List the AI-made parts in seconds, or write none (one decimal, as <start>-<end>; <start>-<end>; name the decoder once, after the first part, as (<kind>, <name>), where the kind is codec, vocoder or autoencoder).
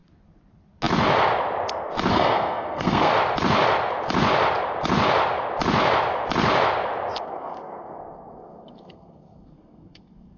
2.1-3.1 (codec, SNAC); 7.2-10.4